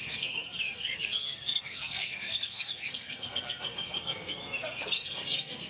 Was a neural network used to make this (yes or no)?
yes